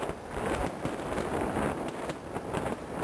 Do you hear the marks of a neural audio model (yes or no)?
no